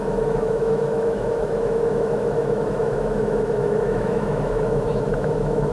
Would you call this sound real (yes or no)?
no